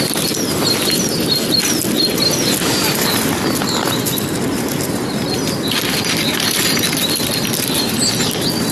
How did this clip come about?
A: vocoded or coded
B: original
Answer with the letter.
B